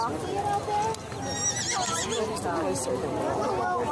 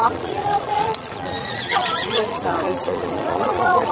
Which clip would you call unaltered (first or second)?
first